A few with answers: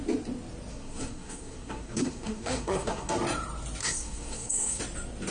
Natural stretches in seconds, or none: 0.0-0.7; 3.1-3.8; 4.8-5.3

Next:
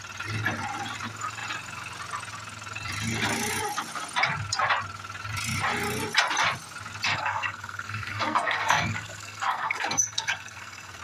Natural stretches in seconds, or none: 0.0-7.1